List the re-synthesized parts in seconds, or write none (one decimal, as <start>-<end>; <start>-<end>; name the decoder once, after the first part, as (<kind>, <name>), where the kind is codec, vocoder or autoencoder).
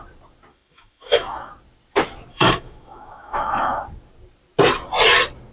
0.5-1.5 (autoencoder, DAC-VAE); 2.3-3.8